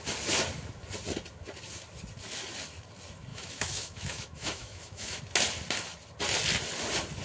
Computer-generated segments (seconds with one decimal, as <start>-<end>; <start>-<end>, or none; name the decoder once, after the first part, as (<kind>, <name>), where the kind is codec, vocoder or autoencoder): 3.3-5.2 (autoencoder, DAC-VAE)